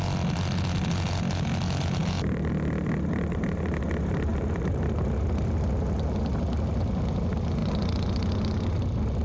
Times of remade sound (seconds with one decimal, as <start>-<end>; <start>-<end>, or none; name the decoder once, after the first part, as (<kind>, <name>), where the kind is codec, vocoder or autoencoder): 2.0-2.5 (vocoder, BigVGAN v2); 4.3-5.3